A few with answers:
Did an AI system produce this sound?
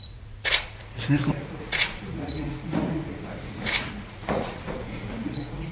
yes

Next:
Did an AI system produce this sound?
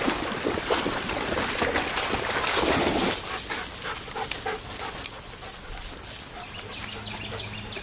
no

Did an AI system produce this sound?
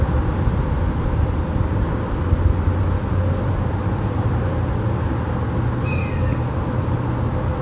no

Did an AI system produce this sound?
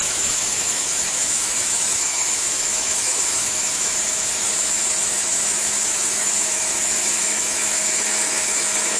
yes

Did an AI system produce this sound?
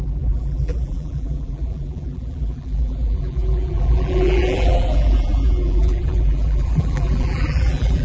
yes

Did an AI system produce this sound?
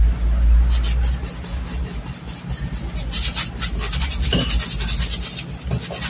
no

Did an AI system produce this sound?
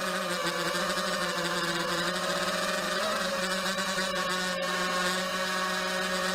no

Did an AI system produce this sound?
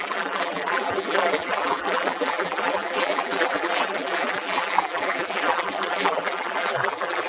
yes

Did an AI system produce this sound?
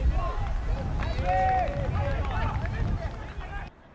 no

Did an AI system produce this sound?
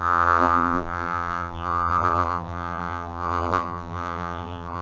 yes